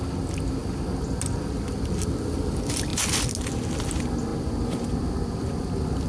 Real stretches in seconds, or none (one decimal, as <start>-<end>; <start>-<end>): 0.0-6.1